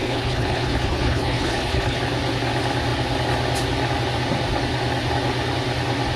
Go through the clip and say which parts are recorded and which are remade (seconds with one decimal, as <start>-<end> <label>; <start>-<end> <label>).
0.0-2.0 remade; 2.0-6.2 recorded

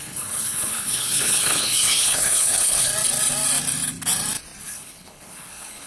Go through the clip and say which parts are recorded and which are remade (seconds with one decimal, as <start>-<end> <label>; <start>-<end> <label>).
0.0-2.9 remade; 2.9-4.6 recorded; 4.6-5.9 remade